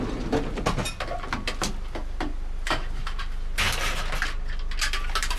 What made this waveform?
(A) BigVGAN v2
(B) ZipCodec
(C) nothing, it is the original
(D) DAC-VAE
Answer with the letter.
C